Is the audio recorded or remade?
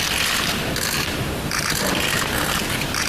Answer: recorded